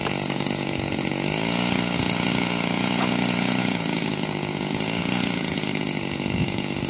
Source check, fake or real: fake